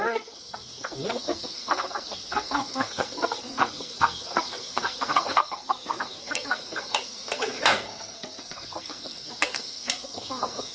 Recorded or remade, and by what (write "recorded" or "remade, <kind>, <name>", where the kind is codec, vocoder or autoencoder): remade, codec, SNAC